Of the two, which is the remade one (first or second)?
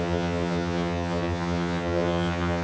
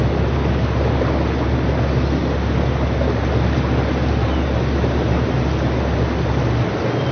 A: first